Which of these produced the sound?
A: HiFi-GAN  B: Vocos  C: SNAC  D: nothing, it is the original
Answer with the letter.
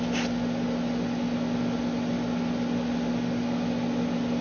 D